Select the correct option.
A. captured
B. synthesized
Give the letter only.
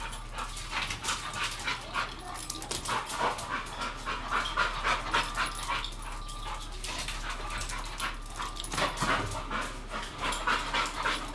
A